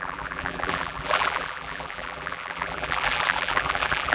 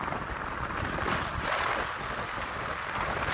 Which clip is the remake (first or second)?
first